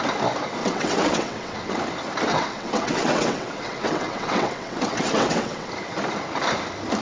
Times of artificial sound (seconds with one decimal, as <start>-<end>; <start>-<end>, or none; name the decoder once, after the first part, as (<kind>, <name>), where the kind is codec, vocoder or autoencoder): 0.6-1.7 (vocoder, WaveNeXt); 2.3-5.7